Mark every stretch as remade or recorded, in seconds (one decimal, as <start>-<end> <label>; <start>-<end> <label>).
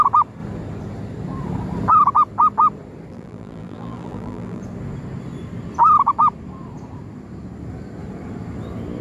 0.0-3.1 recorded; 3.1-4.6 remade; 4.6-9.0 recorded